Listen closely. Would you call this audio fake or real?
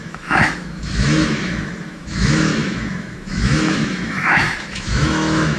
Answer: fake